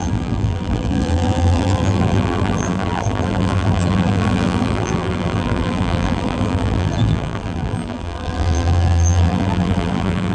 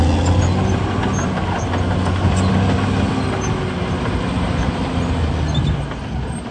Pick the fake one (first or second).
first